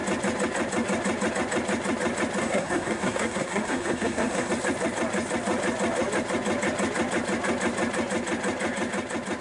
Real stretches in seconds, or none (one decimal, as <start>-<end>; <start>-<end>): 0.0-2.4; 4.5-9.4